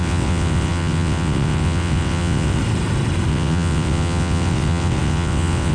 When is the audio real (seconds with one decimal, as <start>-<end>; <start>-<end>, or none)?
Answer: 2.6-3.3